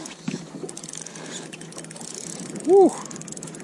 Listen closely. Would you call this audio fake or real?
real